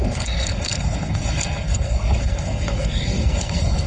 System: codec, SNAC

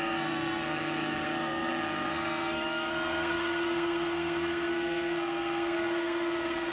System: codec, SNAC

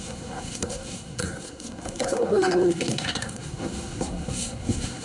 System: codec, SNAC